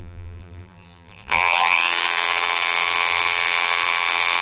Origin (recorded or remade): remade